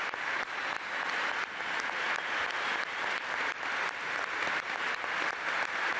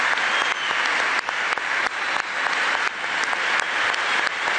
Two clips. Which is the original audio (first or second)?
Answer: second